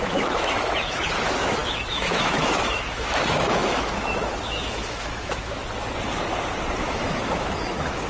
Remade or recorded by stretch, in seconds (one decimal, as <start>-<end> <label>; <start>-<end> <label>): 0.0-5.6 remade; 5.6-6.8 recorded; 6.8-8.1 remade